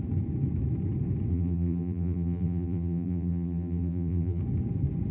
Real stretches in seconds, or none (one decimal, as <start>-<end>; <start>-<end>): 0.0-1.3; 4.4-5.1